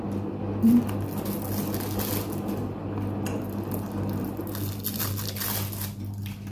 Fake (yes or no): no